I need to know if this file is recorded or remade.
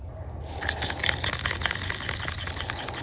recorded